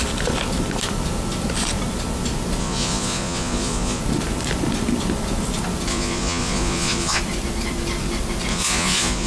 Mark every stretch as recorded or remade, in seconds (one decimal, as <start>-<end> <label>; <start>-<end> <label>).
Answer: 0.0-2.6 recorded; 2.6-4.0 remade; 4.0-5.9 recorded; 5.9-7.2 remade; 7.2-8.5 recorded; 8.5-9.3 remade